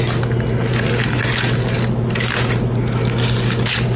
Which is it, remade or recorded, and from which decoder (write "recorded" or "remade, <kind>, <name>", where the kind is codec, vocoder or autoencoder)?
recorded